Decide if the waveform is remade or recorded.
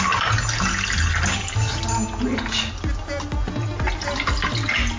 recorded